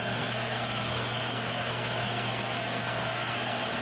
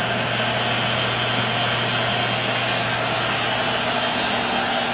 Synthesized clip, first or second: first